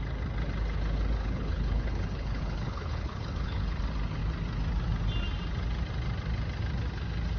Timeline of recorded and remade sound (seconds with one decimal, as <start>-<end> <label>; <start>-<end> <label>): 0.0-1.2 recorded; 1.2-3.8 remade; 3.8-7.4 recorded